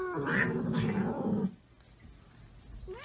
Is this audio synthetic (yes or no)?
no